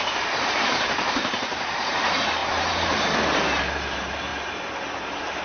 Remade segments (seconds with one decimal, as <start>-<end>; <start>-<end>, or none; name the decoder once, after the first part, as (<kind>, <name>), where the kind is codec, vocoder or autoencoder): 0.0-4.3 (vocoder, BigVGAN v2); 4.9-5.4

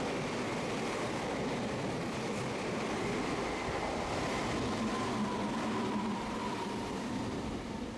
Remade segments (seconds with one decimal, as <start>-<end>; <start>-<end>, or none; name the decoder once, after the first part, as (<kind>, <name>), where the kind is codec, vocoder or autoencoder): 0.0-4.3 (vocoder, BigVGAN v2); 5.8-8.0

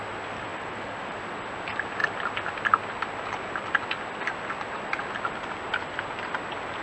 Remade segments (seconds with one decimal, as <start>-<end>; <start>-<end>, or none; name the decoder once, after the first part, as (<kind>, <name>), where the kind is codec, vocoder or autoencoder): 0.5-1.2 (vocoder, BigVGAN v2)

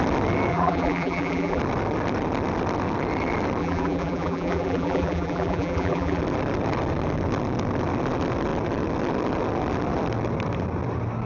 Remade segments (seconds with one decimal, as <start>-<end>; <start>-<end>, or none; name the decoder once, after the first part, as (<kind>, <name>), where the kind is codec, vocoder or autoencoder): 0.5-1.6 (vocoder, BigVGAN v2); 3.6-6.2

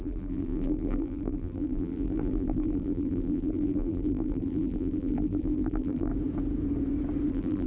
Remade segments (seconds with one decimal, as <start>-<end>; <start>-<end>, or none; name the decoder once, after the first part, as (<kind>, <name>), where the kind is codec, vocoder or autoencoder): 0.0-6.1 (vocoder, BigVGAN v2); 7.3-7.7

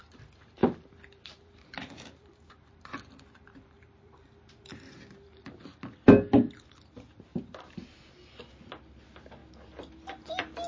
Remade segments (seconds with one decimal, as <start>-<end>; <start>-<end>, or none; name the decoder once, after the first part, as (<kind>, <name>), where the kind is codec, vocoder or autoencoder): 0.6-5.4 (vocoder, BigVGAN v2); 7.3-7.8

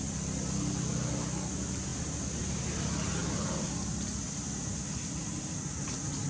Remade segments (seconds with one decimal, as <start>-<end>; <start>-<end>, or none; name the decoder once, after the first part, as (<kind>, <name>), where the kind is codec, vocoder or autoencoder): 3.2-5.6 (vocoder, BigVGAN v2)

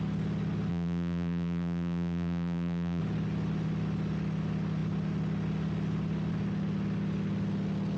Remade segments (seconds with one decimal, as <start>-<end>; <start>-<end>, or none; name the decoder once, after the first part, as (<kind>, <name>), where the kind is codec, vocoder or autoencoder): 0.7-3.0 (vocoder, BigVGAN v2)